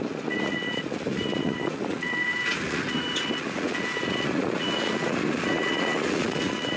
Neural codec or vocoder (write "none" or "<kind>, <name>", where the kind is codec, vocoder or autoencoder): vocoder, Vocos